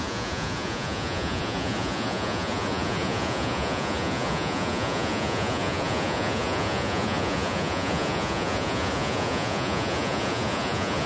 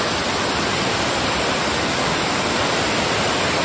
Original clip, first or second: second